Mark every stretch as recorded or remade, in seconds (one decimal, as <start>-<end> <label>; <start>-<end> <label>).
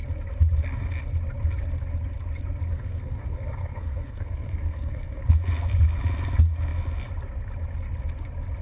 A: 0.0-2.7 recorded; 2.7-5.2 remade; 5.2-8.6 recorded